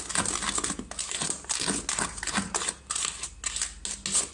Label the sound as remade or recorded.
recorded